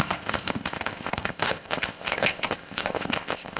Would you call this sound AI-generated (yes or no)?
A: yes